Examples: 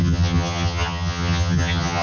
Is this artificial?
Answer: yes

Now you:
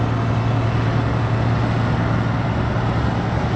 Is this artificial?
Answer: no